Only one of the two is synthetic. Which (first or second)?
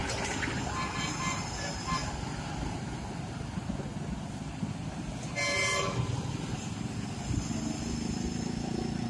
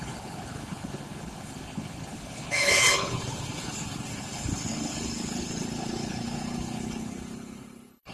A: second